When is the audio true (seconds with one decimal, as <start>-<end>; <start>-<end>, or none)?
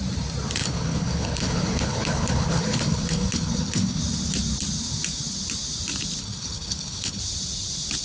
0.0-0.6; 4.0-6.2; 7.2-8.0